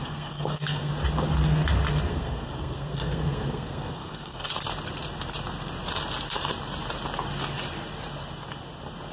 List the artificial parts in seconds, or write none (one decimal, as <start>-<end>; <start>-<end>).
0.0-0.9; 2.1-4.5